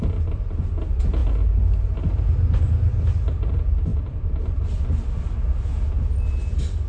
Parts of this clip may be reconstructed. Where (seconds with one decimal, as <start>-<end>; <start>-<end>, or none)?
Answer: none